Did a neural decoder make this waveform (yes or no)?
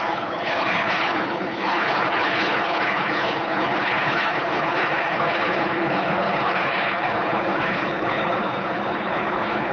yes